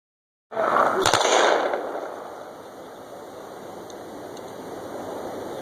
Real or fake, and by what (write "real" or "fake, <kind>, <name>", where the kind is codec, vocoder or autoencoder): real